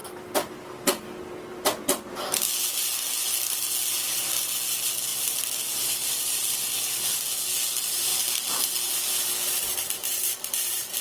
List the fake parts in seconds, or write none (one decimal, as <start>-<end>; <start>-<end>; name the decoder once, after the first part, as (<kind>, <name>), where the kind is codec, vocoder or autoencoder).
5.1-6.8 (vocoder, BigVGAN v2)